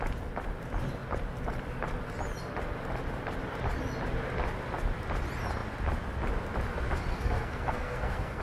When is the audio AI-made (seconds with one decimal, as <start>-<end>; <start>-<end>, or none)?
7.1-8.4